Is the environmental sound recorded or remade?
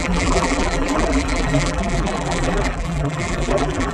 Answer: remade